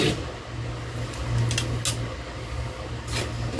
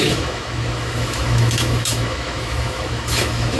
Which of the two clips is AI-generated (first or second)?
second